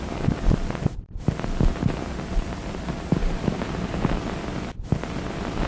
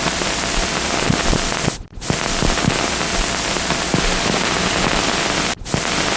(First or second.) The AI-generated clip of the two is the first